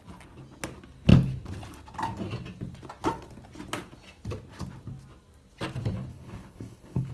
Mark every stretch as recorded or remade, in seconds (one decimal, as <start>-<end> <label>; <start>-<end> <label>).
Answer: 0.0-6.1 recorded; 6.1-7.1 remade